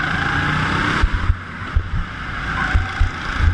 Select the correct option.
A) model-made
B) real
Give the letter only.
B